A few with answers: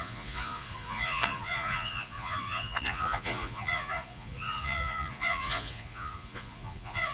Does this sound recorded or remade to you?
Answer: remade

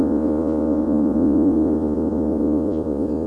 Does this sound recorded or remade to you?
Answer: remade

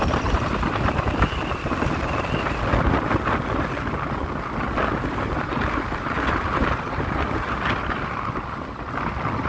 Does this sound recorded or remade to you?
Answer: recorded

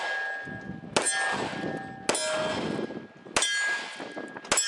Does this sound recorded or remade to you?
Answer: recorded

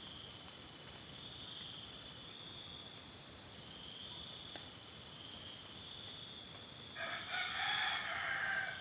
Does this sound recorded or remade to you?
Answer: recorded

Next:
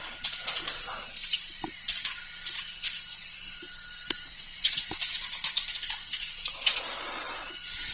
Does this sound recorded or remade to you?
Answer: remade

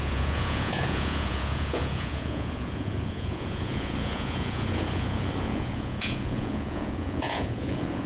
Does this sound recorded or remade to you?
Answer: remade